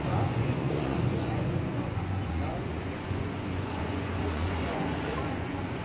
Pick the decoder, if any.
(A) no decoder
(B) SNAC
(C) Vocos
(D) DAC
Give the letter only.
C